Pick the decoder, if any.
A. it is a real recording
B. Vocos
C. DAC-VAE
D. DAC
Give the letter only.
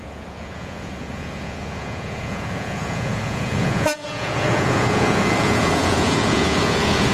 B